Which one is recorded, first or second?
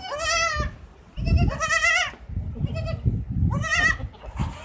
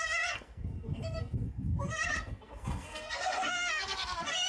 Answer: first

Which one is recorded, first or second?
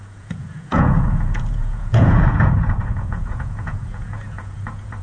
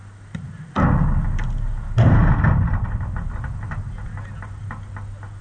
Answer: second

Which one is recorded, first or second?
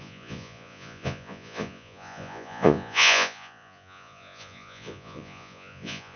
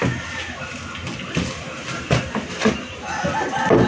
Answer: second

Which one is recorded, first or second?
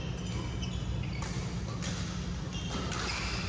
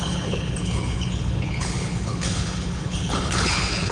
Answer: first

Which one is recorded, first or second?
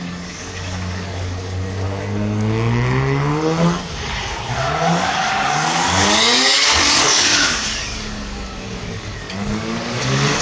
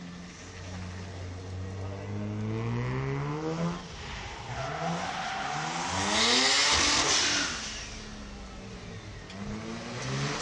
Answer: second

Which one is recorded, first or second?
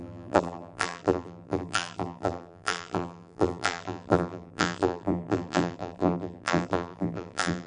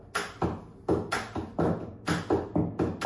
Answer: second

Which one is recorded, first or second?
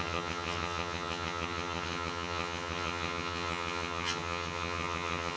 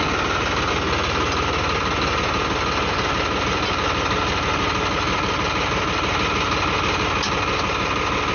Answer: second